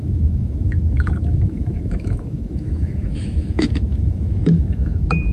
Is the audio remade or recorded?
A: remade